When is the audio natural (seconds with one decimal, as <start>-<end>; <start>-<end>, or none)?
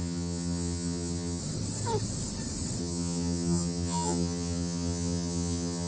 1.4-2.8